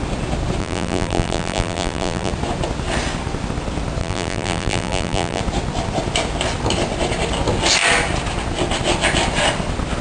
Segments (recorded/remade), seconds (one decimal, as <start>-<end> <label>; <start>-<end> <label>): 0.0-0.6 recorded; 0.6-2.3 remade; 2.3-4.0 recorded; 4.0-5.4 remade; 5.4-10.0 recorded